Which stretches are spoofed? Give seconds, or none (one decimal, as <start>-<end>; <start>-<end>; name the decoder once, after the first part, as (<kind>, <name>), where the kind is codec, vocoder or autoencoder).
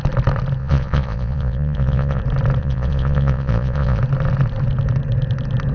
0.6-2.2 (vocoder, Vocos); 2.6-4.0